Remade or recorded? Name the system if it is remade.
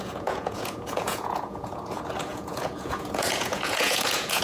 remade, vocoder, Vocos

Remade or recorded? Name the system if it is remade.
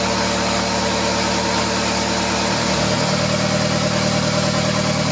recorded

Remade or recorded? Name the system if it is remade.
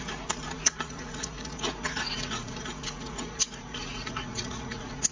remade, vocoder, Vocos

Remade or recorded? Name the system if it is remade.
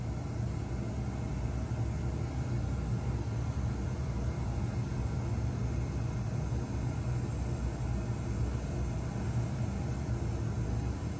recorded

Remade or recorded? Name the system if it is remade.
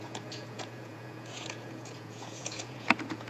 remade, vocoder, Vocos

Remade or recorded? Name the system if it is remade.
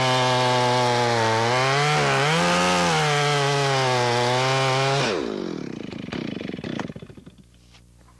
recorded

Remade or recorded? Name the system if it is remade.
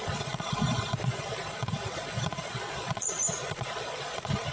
remade, vocoder, Vocos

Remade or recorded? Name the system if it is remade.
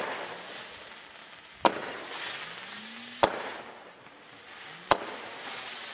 recorded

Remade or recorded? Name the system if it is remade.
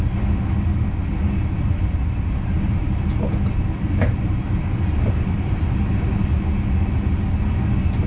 recorded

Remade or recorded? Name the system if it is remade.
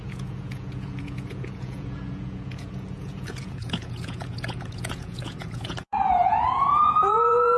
remade, vocoder, Vocos